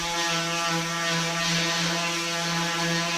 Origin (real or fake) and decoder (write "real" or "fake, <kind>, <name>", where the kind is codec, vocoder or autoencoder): real